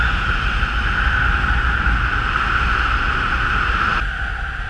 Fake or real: real